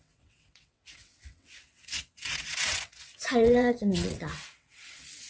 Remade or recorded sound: remade